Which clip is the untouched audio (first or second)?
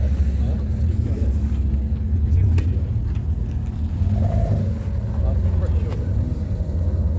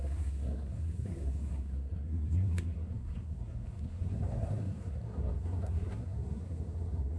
first